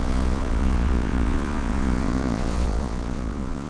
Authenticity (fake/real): fake